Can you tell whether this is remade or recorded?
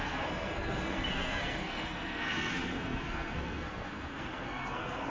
remade